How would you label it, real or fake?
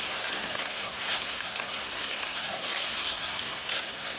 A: fake